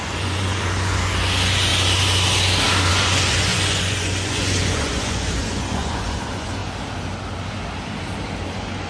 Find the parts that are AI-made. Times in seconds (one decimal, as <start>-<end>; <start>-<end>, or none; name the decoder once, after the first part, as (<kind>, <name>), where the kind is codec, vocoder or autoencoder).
0.0-1.7 (vocoder, Vocos); 2.9-6.6; 8.5-8.9